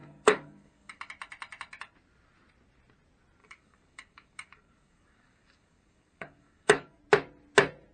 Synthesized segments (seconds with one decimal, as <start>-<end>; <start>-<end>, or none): 0.0-1.0; 3.4-7.0